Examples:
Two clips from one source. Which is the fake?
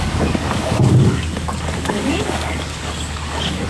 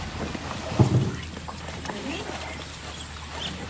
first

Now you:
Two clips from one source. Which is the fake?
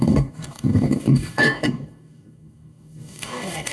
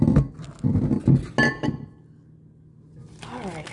first